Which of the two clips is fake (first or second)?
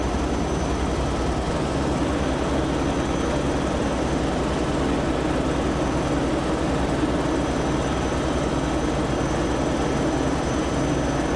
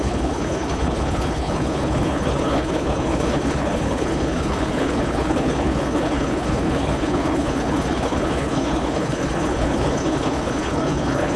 second